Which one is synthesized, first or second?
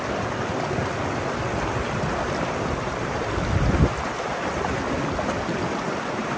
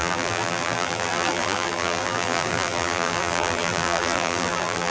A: second